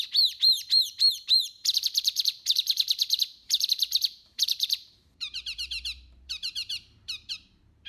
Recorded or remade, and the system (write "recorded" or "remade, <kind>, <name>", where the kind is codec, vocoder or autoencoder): remade, vocoder, BigVGAN v2